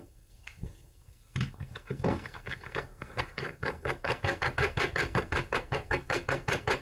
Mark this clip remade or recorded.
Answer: remade